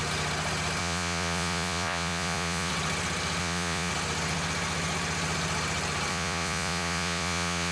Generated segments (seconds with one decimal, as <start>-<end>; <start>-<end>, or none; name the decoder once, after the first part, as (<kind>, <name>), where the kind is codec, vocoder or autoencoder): 0.8-2.7 (vocoder, Vocos); 3.4-3.9; 6.1-7.7